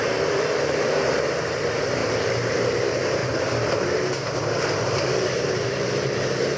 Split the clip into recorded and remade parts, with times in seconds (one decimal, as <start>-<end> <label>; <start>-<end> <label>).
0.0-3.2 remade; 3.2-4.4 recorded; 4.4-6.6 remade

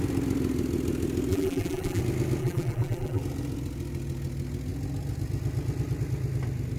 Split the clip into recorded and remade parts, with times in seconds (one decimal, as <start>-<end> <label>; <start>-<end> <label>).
0.0-1.3 recorded; 1.3-2.0 remade; 2.0-2.4 recorded; 2.4-3.2 remade; 3.2-6.8 recorded

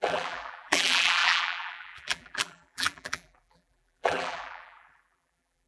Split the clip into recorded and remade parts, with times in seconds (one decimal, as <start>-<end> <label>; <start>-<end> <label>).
0.0-5.7 remade

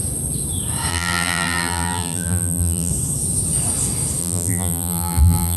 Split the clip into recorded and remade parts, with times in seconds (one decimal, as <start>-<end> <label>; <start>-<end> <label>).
0.0-0.9 recorded; 0.9-2.9 remade; 2.9-4.2 recorded; 4.2-5.6 remade